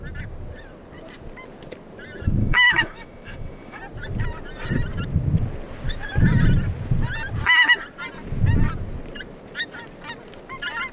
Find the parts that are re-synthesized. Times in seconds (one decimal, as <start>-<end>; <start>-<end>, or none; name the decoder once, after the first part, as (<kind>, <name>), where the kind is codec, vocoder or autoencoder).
2.4-3.8 (autoencoder, DAC-VAE)